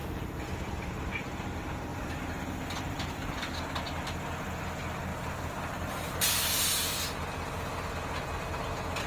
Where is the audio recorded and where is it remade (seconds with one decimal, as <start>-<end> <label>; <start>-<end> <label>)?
0.0-0.9 remade; 0.9-1.9 recorded; 1.9-3.5 remade; 3.5-5.1 recorded; 5.1-6.4 remade; 6.4-9.1 recorded